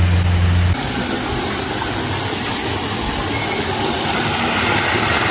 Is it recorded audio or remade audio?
recorded